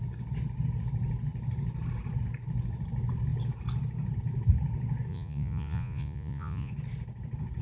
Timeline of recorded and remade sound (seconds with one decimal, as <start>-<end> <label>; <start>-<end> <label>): 0.0-5.1 recorded; 5.1-6.7 remade; 6.7-7.6 recorded